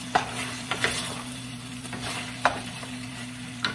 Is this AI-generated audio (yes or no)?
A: yes